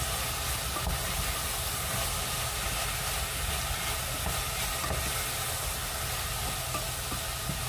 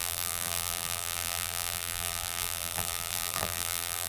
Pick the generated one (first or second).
second